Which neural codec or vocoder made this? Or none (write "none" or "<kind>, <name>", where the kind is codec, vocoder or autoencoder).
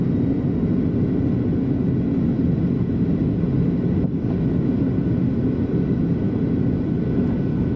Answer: none